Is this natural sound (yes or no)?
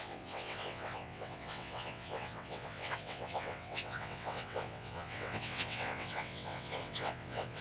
no